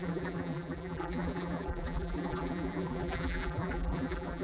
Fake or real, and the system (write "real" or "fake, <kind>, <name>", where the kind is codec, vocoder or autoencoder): fake, vocoder, BigVGAN v2